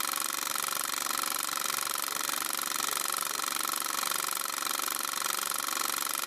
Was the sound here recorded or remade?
recorded